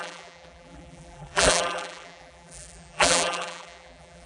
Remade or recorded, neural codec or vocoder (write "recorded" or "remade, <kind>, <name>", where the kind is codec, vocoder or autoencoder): remade, vocoder, BigVGAN v2